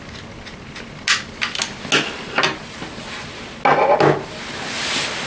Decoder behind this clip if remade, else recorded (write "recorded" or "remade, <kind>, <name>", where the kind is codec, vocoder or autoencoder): recorded